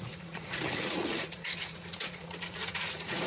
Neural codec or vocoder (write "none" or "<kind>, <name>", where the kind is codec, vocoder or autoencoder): vocoder, Vocos